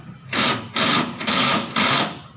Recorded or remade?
recorded